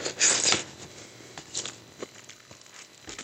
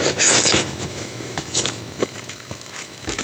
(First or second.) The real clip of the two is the first